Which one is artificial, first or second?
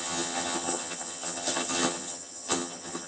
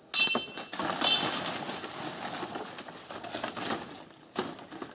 first